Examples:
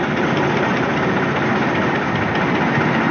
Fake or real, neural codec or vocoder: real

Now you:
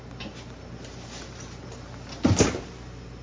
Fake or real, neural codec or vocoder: real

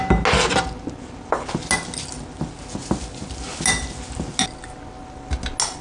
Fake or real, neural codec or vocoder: real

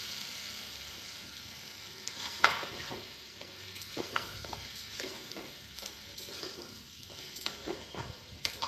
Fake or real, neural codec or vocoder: fake, codec, SNAC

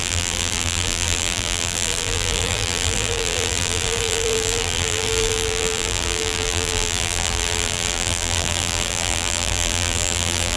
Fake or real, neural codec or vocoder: fake, vocoder, BigVGAN v2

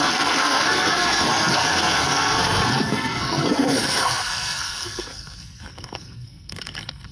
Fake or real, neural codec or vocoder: fake, codec, SNAC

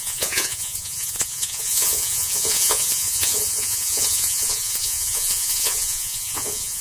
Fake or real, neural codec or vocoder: fake, vocoder, Vocos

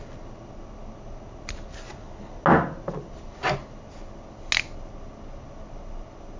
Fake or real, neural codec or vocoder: real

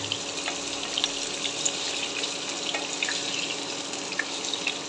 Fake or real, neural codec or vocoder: real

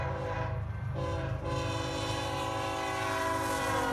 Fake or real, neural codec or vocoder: real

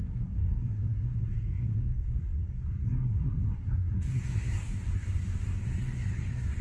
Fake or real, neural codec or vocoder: fake, codec, SNAC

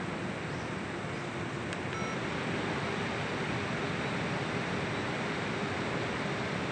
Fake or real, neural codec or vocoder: real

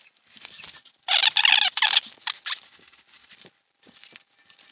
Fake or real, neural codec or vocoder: real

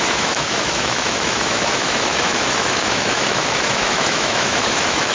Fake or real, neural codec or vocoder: fake, autoencoder, DAC-VAE